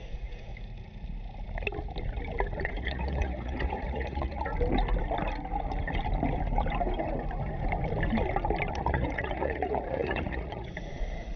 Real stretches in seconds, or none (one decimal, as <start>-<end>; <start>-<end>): 0.5-2.6; 4.5-8.7